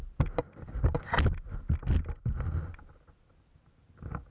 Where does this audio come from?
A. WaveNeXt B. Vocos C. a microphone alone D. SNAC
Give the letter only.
C